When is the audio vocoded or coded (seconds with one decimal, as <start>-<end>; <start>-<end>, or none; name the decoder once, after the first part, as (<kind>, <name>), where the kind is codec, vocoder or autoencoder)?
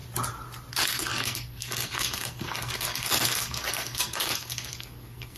0.7-5.4 (codec, SNAC)